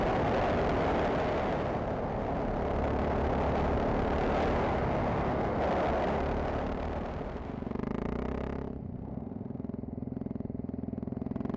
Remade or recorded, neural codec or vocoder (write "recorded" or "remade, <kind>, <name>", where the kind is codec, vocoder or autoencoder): recorded